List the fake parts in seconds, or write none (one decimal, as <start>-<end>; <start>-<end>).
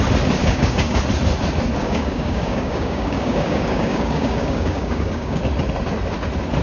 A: 0.4-1.0; 1.8-5.4